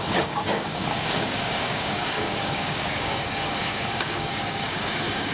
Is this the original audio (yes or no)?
no